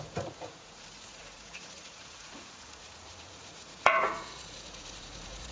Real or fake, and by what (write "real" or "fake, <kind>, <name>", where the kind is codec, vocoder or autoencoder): fake, vocoder, Vocos